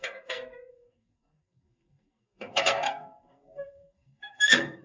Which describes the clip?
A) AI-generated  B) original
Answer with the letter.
A